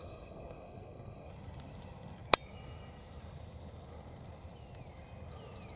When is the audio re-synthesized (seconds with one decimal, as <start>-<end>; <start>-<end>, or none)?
0.0-1.3

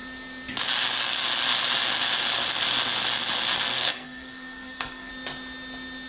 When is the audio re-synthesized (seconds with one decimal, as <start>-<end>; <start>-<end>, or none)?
3.7-5.1

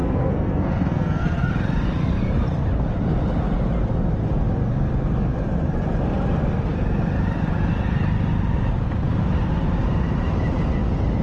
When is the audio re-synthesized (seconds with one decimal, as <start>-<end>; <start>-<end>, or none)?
0.0-1.5

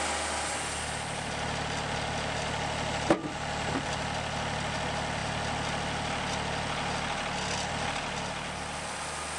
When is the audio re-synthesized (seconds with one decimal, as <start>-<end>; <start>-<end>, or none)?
none